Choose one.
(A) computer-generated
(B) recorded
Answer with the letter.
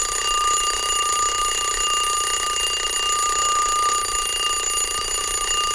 A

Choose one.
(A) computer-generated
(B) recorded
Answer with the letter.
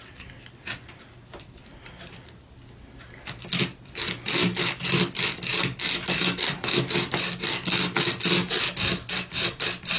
B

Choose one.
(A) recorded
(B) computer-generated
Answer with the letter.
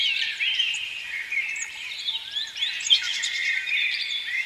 B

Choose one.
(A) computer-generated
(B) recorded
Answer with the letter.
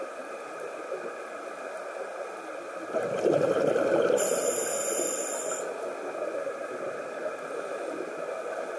B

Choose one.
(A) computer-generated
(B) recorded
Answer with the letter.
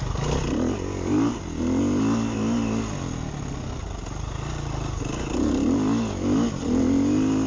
B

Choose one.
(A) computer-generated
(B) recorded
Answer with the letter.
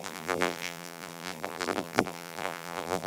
A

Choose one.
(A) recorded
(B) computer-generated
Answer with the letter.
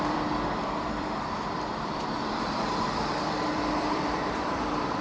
B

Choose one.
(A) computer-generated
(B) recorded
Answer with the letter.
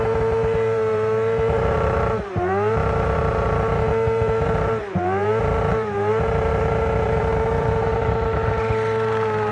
A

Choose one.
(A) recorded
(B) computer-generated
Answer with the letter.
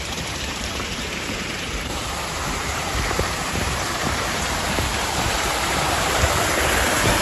B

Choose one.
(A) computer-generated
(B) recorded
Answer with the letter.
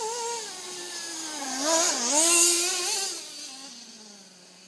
B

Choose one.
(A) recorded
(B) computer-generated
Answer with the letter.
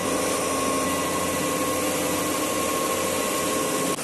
A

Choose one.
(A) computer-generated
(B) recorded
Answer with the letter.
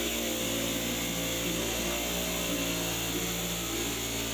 B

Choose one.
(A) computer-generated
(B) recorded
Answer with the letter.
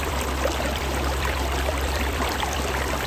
A